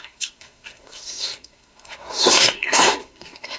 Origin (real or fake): fake